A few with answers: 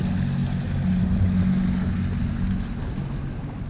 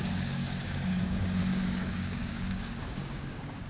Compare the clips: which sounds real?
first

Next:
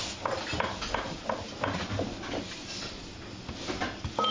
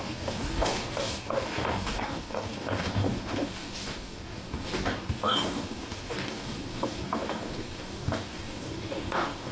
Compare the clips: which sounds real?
first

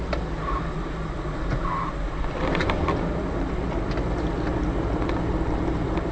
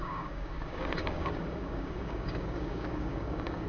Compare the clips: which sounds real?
first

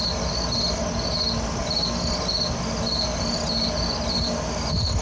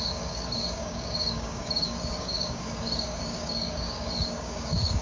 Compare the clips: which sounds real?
first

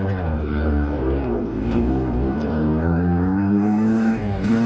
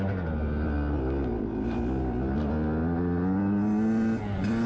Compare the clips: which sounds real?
second